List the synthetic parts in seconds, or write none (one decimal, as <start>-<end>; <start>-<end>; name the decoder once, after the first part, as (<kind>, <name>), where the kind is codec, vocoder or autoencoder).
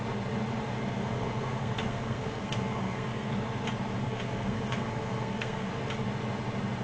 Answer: 0.7-3.3 (codec, SNAC); 4.0-5.7